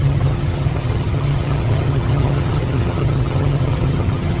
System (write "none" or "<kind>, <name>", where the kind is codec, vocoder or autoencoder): vocoder, HiFi-GAN